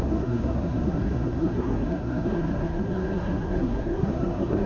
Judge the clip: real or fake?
fake